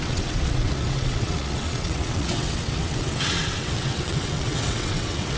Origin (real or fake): fake